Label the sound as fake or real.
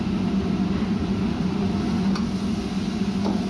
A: real